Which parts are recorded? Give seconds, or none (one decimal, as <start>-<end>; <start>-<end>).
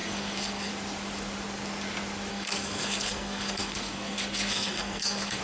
0.7-2.3